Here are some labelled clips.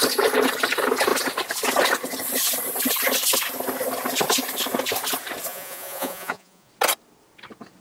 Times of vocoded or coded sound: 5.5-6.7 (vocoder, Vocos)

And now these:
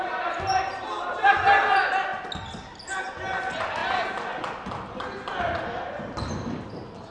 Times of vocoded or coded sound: none

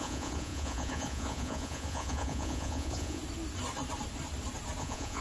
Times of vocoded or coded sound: 0.0-3.2 (vocoder, Vocos); 4.8-5.2

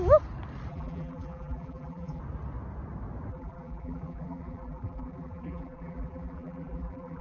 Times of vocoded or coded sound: 0.7-2.2 (vocoder, BigVGAN v2); 3.3-7.2

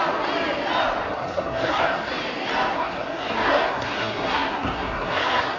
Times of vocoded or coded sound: 1.1-2.1 (codec, SNAC); 2.7-5.6

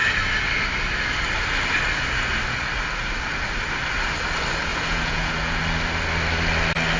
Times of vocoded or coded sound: 4.7-5.6 (vocoder, Vocos)

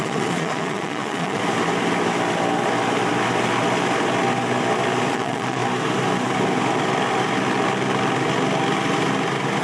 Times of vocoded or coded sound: 0.0-1.4 (vocoder, Vocos); 5.1-5.6

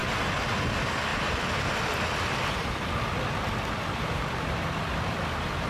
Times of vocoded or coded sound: 1.1-4.5 (vocoder, BigVGAN v2)